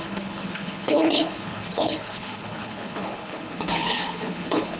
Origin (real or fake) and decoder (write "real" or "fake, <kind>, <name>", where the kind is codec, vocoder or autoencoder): fake, codec, HILCodec